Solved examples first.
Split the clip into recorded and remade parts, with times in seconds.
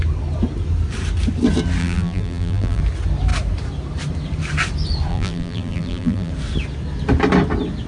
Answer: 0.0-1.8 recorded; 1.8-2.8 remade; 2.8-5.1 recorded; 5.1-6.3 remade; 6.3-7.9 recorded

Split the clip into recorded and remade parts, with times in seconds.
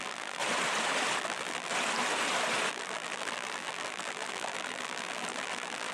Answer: 0.0-0.4 remade; 0.4-1.2 recorded; 1.2-1.7 remade; 1.7-2.7 recorded; 2.7-5.9 remade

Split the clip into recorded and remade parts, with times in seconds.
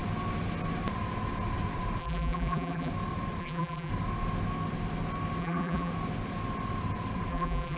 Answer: 0.0-2.0 recorded; 2.0-2.9 remade; 2.9-3.4 recorded; 3.4-3.9 remade; 3.9-5.4 recorded; 5.4-5.9 remade; 5.9-7.3 recorded; 7.3-7.8 remade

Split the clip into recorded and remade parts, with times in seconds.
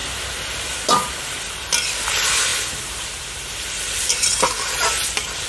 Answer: 0.0-2.5 recorded; 2.5-3.7 remade; 3.7-5.5 recorded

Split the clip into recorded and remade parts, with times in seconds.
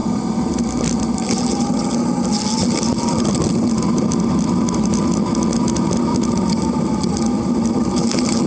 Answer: 0.0-6.1 recorded; 6.1-6.7 remade; 6.7-8.5 recorded